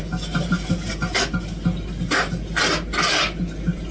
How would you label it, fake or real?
real